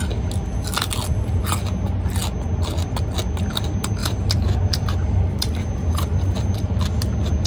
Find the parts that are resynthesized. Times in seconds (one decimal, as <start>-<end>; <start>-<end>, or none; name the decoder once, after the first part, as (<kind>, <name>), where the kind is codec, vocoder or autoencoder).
4.0-5.8 (vocoder, BigVGAN v2)